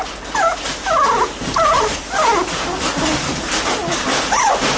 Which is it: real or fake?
real